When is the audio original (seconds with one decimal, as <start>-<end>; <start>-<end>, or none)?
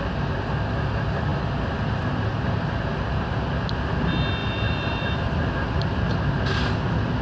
0.0-4.4; 5.5-7.2